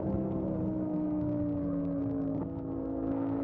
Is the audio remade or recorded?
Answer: remade